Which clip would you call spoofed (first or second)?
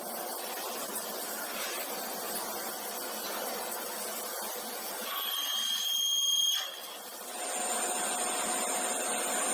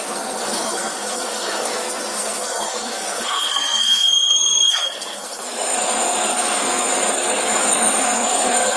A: second